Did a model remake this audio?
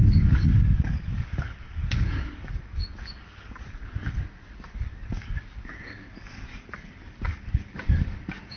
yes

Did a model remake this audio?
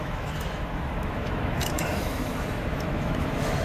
yes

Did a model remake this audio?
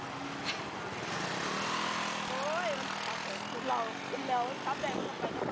no